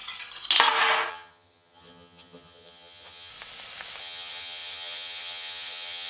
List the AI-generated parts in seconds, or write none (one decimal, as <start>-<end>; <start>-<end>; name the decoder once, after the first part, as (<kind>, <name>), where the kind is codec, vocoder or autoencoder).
1.1-3.3 (vocoder, HiFi-GAN); 4.0-6.1